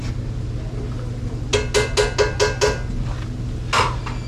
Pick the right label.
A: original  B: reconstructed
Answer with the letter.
A